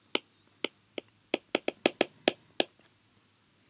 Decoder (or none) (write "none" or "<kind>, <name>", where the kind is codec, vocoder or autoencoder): none